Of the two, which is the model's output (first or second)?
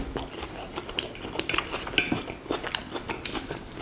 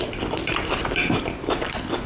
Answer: second